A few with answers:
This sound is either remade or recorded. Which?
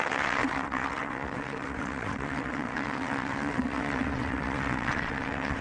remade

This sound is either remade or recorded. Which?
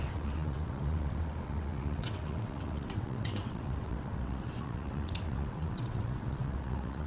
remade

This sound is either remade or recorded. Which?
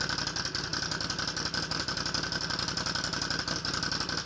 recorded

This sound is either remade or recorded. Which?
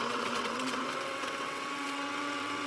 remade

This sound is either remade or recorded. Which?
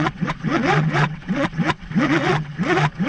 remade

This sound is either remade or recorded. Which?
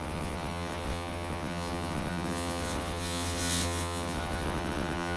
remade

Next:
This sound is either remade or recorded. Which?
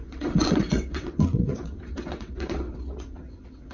remade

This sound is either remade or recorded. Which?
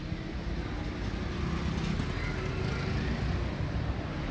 recorded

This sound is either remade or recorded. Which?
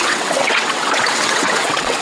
remade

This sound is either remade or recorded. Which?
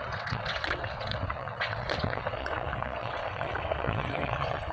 remade